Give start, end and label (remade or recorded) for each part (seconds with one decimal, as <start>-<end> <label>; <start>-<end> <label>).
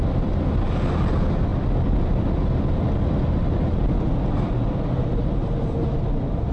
0.0-6.5 recorded